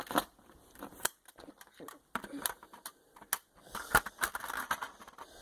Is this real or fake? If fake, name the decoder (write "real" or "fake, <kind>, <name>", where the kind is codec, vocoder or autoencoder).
real